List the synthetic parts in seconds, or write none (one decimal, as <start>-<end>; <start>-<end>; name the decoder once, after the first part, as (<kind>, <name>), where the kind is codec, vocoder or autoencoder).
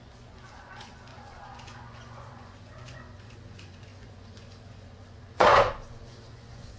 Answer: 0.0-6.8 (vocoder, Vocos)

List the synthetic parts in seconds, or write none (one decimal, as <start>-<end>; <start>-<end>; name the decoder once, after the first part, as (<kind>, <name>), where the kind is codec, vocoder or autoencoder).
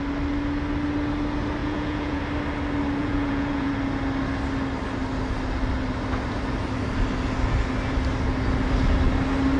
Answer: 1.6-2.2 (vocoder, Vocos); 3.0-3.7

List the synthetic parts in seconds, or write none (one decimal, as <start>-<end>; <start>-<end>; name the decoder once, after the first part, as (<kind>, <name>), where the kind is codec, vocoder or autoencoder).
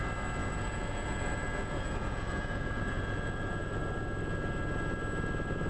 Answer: 0.4-3.8 (vocoder, Vocos)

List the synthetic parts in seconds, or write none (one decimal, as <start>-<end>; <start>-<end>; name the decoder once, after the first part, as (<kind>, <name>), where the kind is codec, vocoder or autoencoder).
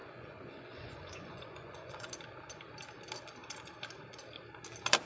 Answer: 0.0-2.1 (vocoder, Vocos)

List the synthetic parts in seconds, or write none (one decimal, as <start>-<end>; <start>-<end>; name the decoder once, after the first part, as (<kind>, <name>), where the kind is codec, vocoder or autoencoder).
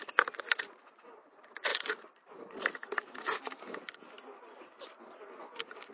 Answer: none